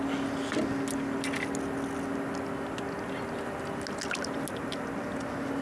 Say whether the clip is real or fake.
real